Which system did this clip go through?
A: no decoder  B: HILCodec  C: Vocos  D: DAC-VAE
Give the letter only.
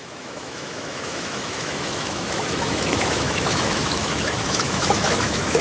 D